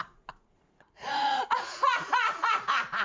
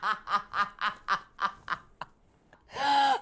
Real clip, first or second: second